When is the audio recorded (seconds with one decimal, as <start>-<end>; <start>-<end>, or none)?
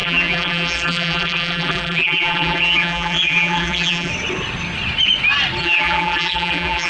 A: 4.1-5.6